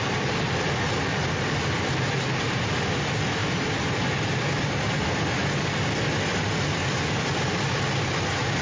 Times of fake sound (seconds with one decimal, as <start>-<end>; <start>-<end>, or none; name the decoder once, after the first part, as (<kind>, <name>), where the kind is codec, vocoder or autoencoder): none